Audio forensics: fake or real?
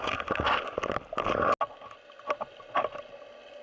real